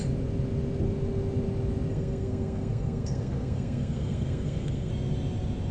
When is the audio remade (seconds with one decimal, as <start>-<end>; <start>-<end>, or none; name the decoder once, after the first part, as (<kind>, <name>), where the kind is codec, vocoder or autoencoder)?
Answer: 1.9-4.9 (codec, SNAC)